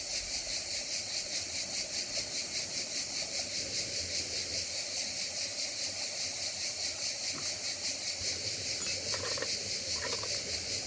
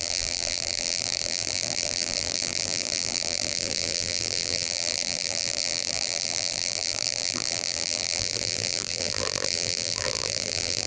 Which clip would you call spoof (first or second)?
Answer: second